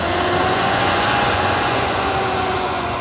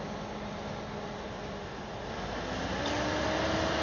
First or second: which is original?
second